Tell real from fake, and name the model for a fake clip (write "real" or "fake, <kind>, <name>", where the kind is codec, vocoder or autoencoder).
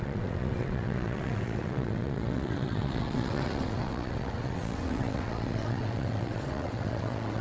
fake, vocoder, WaveNeXt